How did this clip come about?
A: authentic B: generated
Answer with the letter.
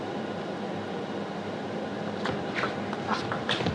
A